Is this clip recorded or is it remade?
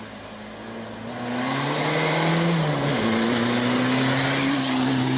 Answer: recorded